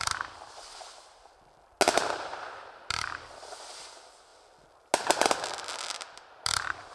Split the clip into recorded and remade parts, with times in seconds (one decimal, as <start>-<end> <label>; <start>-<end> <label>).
0.0-6.9 recorded